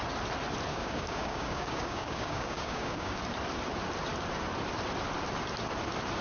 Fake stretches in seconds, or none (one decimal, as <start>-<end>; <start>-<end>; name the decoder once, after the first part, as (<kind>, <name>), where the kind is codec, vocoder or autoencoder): 0.7-3.2 (codec, DAC)

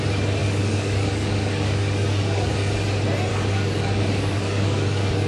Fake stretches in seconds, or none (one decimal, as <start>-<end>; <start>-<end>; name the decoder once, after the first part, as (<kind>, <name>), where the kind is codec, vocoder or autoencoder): 0.4-2.5 (codec, DAC); 3.3-5.3

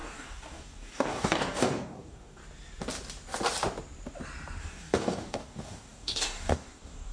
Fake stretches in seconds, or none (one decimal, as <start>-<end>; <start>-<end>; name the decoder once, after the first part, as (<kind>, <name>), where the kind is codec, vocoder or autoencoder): 0.0-2.4 (codec, DAC); 4.6-7.1

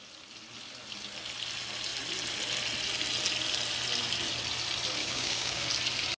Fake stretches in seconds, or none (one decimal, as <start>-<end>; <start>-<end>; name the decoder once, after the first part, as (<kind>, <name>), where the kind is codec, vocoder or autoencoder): 5.0-5.7 (codec, DAC)

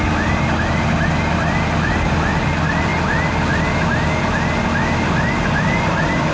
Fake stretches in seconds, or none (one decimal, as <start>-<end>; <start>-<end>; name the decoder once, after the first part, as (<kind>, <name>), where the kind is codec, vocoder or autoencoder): none

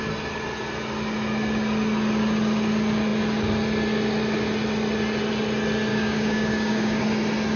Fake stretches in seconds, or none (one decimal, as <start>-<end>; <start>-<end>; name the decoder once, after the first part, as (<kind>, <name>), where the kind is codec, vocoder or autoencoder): 5.9-7.0 (codec, DAC)

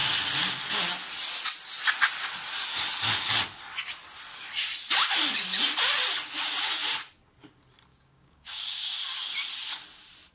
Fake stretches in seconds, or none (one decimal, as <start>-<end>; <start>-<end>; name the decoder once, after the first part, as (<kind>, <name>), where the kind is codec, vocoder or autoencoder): 7.9-8.8 (codec, DAC)

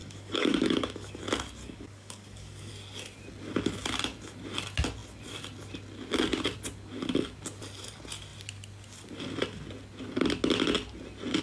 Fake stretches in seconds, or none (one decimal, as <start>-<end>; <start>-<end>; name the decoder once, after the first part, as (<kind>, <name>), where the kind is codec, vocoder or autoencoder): 0.0-1.2 (codec, DAC); 1.6-2.7